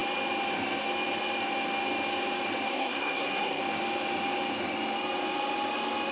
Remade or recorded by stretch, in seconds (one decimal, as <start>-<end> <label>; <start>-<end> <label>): 0.0-2.7 recorded; 2.7-3.6 remade; 3.6-6.1 recorded